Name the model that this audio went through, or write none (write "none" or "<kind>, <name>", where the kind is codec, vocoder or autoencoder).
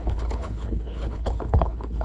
codec, HILCodec